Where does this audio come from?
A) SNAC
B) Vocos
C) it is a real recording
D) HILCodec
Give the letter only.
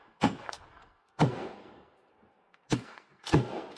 A